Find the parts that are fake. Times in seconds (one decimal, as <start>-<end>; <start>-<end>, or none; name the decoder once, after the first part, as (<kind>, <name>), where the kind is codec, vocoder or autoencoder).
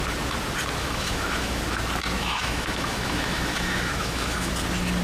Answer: 0.8-1.6 (autoencoder, DAC-VAE); 2.2-4.5